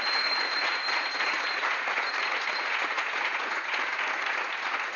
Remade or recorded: remade